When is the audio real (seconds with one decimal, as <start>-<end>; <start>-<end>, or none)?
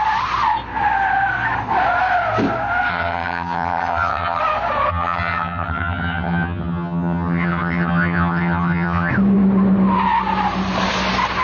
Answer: 0.0-2.9; 4.4-4.9; 9.1-11.4